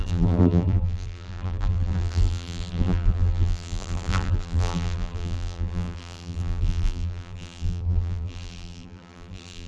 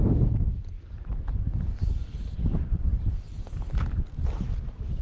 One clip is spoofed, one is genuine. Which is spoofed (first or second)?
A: first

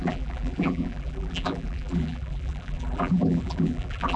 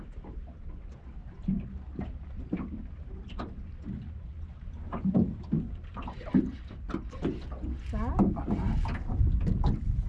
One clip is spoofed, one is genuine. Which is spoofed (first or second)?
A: first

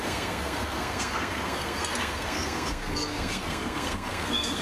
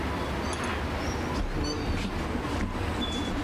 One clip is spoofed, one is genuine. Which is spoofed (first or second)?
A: first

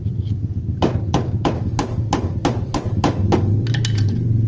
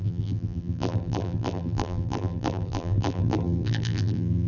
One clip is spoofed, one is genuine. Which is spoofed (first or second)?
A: second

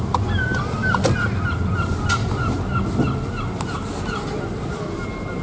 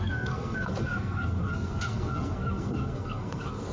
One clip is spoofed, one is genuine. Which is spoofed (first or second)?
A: second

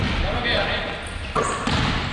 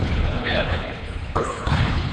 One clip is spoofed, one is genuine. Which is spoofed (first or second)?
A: second